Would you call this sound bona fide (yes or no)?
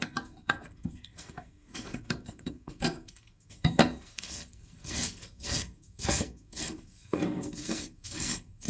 no